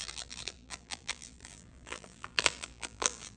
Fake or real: fake